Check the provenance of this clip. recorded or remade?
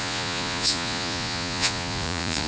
remade